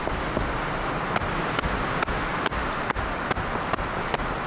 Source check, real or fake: real